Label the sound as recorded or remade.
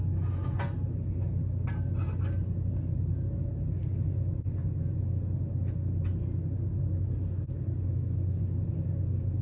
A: recorded